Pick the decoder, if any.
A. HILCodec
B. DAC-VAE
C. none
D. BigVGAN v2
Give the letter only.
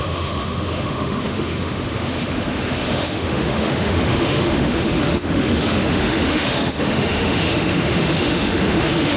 B